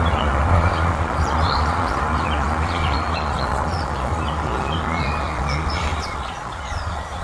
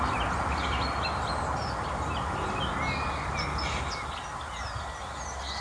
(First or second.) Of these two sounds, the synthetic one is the first